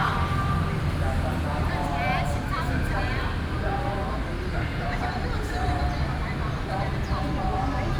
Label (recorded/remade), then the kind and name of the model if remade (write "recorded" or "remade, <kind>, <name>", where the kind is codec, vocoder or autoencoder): recorded